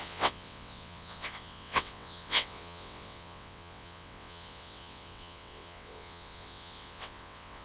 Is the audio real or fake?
fake